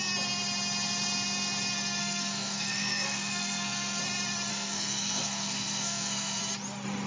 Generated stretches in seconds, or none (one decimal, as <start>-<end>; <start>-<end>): 2.0-4.0; 4.5-6.4